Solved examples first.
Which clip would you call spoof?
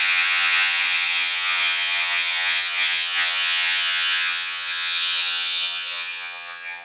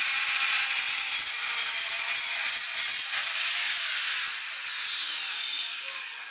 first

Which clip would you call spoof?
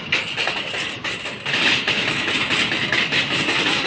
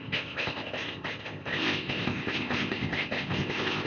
second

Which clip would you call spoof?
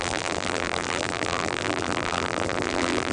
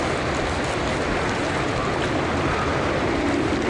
first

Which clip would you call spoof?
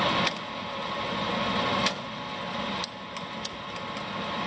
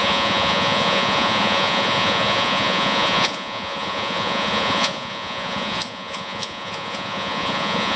second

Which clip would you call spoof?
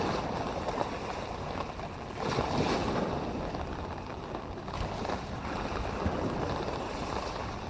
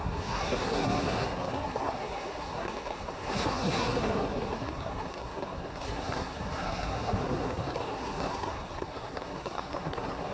second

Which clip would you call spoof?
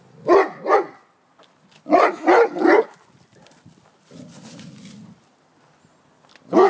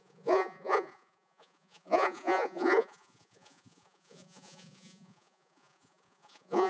second